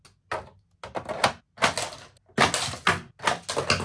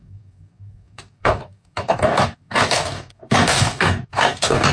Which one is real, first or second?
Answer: first